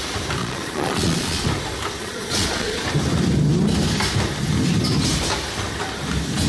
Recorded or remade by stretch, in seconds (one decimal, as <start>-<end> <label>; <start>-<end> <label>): 0.0-0.4 recorded; 0.4-1.5 remade; 1.5-2.0 recorded; 2.0-2.8 remade; 2.8-6.5 recorded